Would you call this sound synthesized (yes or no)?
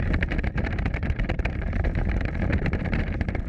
yes